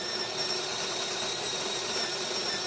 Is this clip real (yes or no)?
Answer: yes